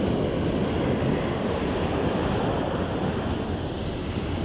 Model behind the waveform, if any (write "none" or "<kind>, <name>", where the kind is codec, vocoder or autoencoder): none